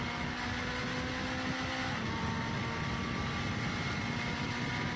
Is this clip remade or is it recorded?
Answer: recorded